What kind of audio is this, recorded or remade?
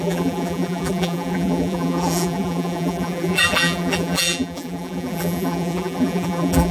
remade